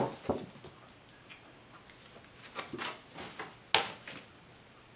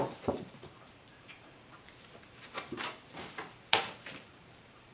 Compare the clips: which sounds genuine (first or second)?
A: first